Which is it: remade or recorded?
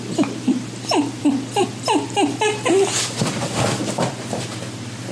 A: remade